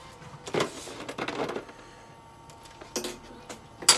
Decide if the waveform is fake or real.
real